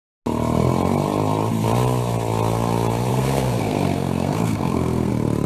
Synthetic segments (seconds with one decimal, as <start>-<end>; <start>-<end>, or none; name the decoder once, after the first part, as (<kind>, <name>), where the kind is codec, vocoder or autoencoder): 3.1-5.1 (codec, SNAC)